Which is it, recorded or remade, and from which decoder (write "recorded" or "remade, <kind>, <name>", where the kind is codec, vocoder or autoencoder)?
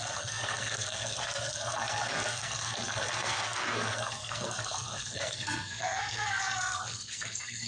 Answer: remade, codec, SNAC